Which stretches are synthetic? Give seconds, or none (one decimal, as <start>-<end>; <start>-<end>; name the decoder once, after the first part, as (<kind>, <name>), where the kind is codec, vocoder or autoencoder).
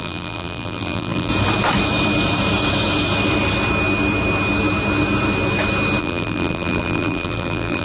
0.0-1.3 (vocoder, BigVGAN v2); 6.0-7.8